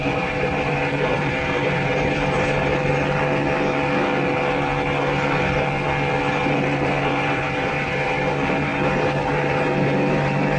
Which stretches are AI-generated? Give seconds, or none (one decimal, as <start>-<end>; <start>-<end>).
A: 0.0-2.7; 6.3-10.6